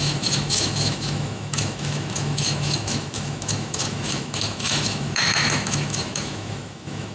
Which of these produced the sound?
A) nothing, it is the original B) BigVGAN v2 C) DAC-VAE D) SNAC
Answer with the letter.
C